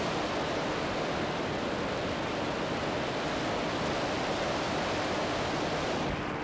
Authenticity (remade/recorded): recorded